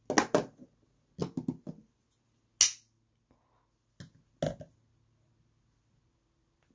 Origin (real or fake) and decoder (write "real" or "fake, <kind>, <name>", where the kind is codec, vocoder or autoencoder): real